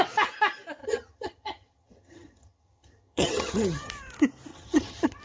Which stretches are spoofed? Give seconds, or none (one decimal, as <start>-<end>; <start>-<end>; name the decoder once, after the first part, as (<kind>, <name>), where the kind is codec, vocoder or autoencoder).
0.8-3.9 (vocoder, HiFi-GAN); 4.5-5.2